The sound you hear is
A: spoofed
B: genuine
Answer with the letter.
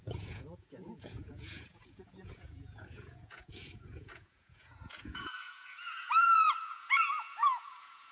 A